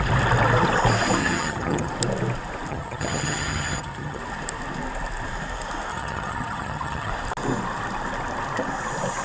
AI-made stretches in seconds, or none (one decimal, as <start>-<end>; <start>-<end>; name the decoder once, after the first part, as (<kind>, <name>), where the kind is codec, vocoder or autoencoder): 1.2-1.9 (vocoder, HiFi-GAN); 2.7-4.2; 5.9-7.1